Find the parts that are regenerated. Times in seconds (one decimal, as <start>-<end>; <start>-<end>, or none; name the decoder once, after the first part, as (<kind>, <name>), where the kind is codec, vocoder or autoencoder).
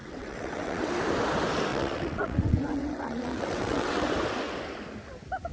0.0-0.9 (vocoder, WaveNeXt); 1.7-4.1